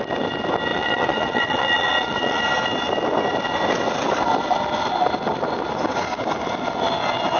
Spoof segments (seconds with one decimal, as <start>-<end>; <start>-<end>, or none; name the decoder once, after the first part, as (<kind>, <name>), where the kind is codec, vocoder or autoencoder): 0.7-2.4 (vocoder, Vocos)